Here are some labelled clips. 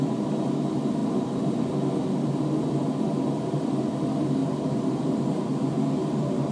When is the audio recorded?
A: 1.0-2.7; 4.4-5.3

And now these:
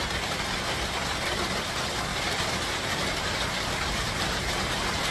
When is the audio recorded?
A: 0.0-2.1

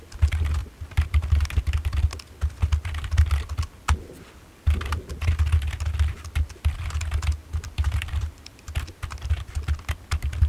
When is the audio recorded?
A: 0.0-0.6; 1.2-7.4; 9.5-10.5

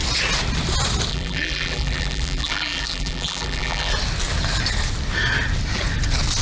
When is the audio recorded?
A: 0.0-1.1; 3.9-6.4